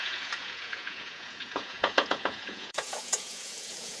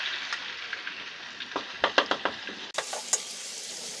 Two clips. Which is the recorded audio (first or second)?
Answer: second